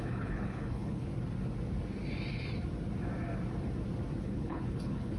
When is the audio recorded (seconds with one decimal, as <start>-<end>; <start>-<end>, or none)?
1.1-4.2